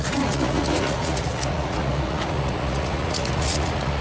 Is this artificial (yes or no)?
yes